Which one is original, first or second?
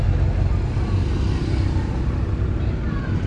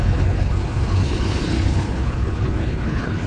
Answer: first